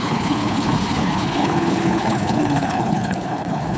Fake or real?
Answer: fake